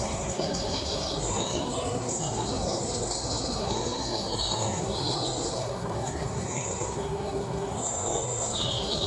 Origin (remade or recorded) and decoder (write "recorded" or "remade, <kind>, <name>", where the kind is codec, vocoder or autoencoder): remade, codec, SNAC